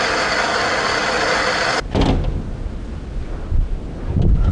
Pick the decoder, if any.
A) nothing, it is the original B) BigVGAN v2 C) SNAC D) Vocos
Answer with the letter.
A